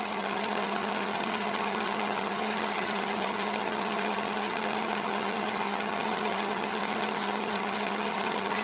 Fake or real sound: fake